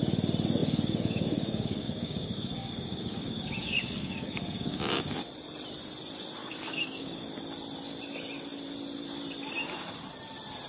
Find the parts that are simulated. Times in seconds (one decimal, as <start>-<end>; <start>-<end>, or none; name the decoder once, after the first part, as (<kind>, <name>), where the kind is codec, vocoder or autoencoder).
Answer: 0.6-5.3 (codec, DAC); 6.4-7.3